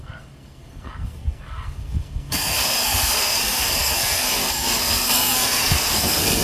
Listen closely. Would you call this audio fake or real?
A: fake